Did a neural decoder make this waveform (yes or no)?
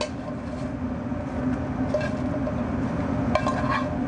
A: no